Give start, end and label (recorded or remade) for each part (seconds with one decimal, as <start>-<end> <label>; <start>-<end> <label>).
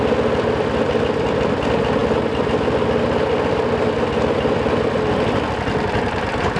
0.0-6.6 recorded